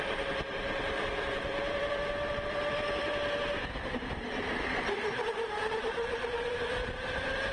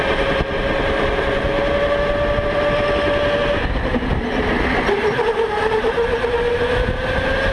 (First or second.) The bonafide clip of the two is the second